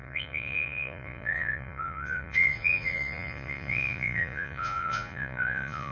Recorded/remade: remade